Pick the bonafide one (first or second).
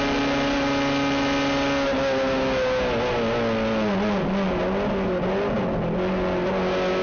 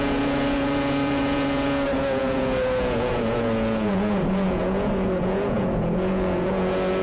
first